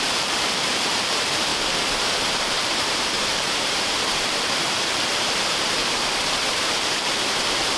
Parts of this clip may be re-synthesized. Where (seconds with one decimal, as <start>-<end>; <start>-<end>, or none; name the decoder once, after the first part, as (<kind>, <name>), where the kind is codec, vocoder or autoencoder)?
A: 0.0-1.5 (vocoder, BigVGAN v2); 2.2-5.8; 6.5-7.8